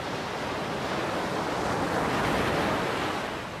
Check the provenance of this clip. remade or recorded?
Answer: recorded